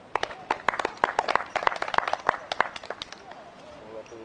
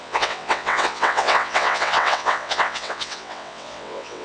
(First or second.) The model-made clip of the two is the second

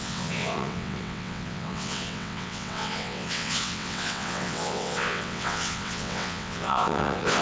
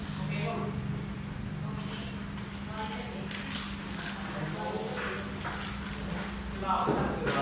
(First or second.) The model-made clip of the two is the first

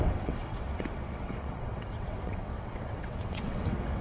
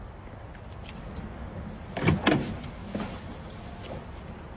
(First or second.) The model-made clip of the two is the first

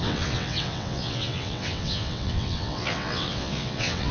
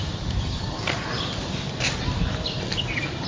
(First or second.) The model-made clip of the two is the first